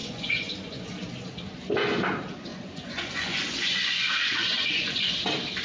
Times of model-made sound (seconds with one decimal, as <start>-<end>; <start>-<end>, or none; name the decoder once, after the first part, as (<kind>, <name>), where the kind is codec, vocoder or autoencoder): 0.0-0.8 (vocoder, Vocos); 2.5-5.1